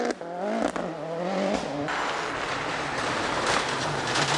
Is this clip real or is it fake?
real